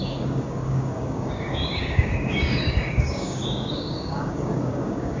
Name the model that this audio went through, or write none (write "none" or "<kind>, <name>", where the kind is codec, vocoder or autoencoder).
codec, DAC